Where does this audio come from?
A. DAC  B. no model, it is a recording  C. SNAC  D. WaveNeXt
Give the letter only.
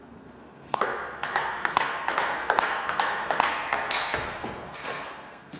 C